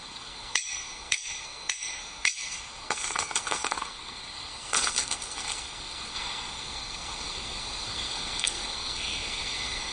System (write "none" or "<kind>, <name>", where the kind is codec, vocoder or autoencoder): codec, SNAC